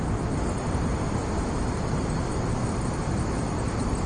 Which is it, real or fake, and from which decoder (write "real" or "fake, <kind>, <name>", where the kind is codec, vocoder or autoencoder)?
real